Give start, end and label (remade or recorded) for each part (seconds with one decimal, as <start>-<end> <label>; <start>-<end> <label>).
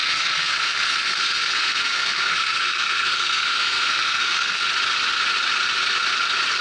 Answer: 0.0-4.6 remade; 4.6-6.6 recorded